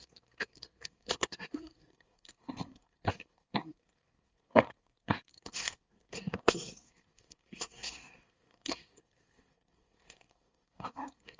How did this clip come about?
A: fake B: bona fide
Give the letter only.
A